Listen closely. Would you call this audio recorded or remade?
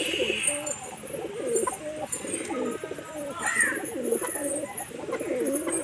recorded